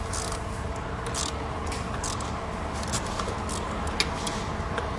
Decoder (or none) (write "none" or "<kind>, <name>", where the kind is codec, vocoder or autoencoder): none